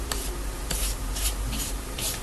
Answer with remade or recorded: remade